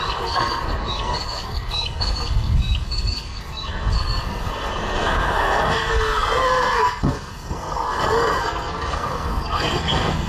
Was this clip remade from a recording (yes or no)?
yes